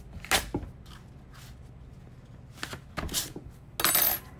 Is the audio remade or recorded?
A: recorded